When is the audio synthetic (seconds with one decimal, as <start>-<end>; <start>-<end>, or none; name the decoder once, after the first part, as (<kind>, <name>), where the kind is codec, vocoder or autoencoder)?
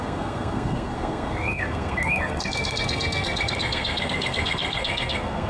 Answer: 0.0-5.5 (codec, SNAC)